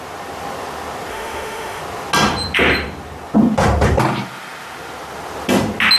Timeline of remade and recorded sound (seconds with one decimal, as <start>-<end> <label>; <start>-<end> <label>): 0.0-1.1 recorded; 1.1-1.8 remade; 1.8-6.0 recorded